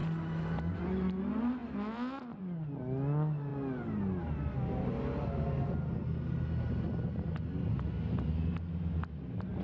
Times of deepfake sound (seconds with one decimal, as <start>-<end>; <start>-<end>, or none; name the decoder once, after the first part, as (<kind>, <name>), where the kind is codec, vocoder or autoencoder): none